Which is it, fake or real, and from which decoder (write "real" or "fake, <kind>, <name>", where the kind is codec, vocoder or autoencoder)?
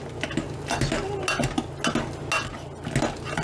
real